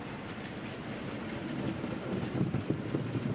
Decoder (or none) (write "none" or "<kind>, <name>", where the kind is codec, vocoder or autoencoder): none